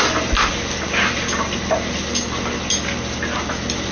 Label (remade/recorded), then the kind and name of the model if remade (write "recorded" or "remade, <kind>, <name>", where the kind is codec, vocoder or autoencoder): recorded